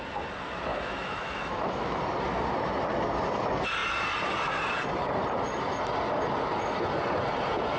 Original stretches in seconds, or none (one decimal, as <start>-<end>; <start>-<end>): 0.0-0.7; 2.0-7.8